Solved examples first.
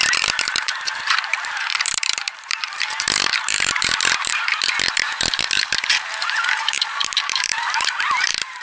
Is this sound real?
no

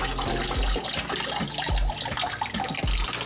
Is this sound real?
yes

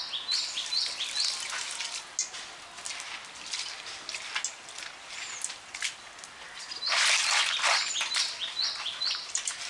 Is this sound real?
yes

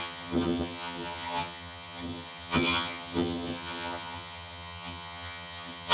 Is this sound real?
no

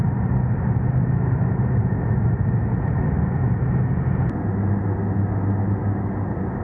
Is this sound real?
yes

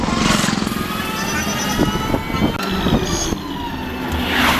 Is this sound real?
yes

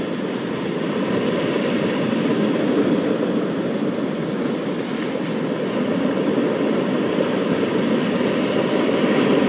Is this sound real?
yes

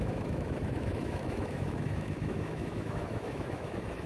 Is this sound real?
no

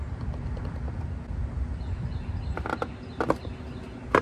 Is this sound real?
yes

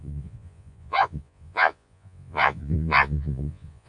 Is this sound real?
no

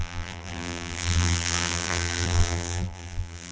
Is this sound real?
no